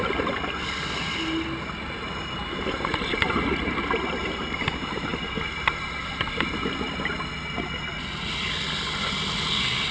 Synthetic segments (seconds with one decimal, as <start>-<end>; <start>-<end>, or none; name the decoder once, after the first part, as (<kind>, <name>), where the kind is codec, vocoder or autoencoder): none